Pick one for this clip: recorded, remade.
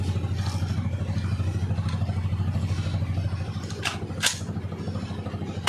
recorded